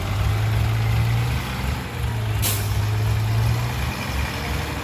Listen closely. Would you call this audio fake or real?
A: real